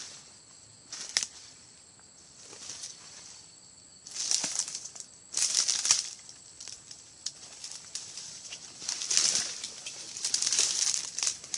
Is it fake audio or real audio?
fake